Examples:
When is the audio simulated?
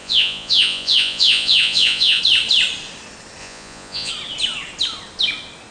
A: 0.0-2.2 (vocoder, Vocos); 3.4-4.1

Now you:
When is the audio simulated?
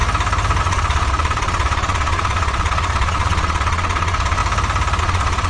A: 0.6-4.4 (vocoder, Vocos); 5.0-5.5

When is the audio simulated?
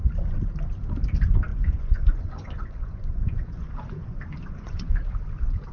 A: 1.5-4.9 (vocoder, Vocos)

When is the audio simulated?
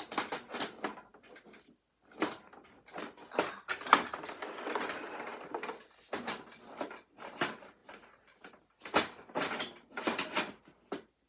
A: none